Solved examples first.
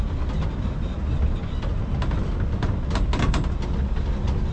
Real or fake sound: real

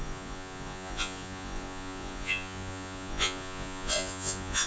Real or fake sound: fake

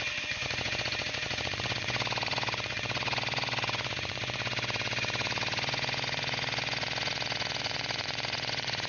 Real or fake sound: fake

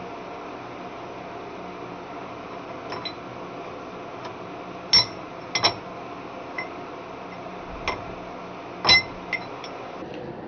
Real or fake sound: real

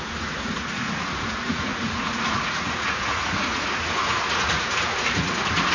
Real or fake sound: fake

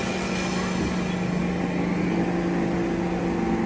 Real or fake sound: real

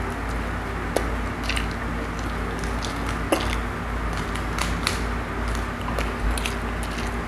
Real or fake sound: real